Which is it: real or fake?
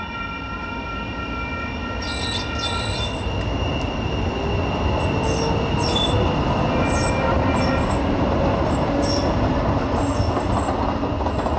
real